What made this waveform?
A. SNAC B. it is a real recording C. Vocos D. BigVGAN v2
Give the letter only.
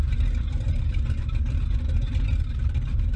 D